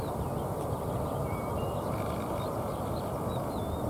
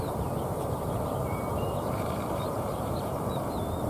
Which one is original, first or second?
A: first